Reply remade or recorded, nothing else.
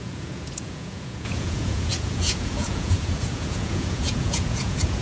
remade